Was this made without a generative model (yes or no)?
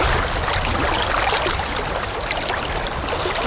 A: yes